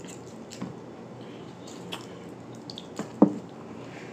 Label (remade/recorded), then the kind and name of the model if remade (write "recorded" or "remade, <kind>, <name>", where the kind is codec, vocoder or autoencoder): recorded